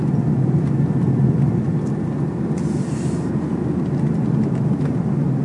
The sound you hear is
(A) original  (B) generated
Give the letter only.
A